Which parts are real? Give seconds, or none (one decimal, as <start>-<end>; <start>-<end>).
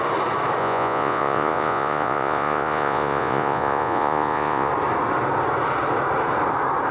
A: 0.0-0.6; 4.7-6.9